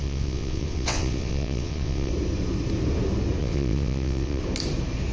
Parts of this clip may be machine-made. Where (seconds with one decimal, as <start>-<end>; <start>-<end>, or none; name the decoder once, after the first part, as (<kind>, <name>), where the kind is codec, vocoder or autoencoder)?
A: 0.0-2.1 (vocoder, WaveNeXt); 3.4-4.4